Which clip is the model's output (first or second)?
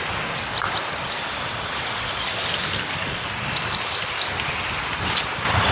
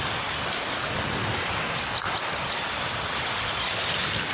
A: second